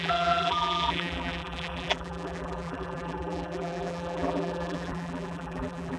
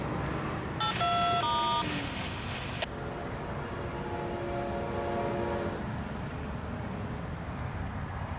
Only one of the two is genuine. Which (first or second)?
second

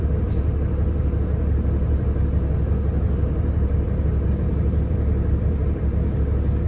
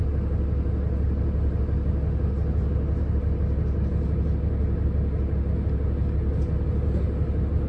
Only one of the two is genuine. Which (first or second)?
second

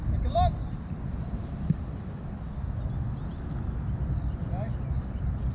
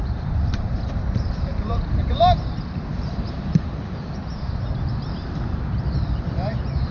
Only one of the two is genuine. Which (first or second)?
first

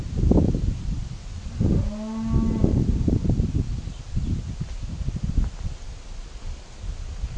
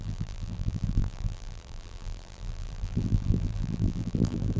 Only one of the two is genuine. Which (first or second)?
first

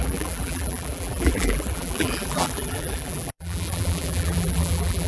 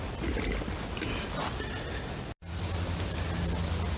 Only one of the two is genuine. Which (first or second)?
second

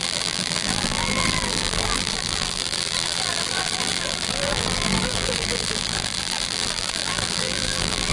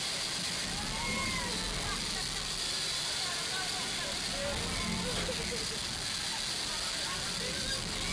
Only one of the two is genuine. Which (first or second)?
second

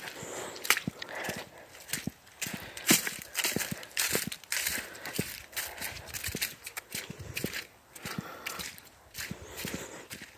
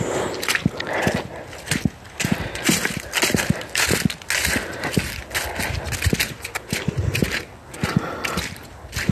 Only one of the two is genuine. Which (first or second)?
second